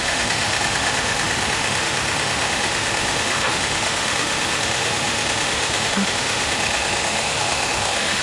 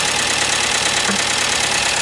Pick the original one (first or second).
second